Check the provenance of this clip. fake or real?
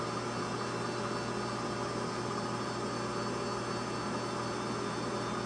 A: real